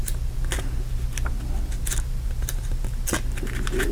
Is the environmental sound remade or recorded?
recorded